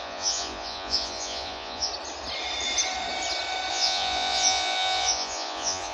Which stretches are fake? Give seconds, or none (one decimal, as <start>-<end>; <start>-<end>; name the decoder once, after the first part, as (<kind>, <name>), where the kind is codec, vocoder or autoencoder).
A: 0.0-1.9 (vocoder, Vocos); 3.7-5.9